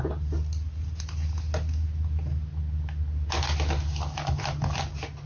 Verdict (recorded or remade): recorded